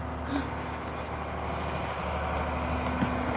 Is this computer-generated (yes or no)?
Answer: no